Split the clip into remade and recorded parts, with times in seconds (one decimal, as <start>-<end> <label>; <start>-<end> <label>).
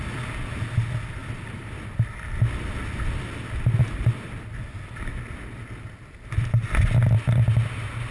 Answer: 0.0-8.1 recorded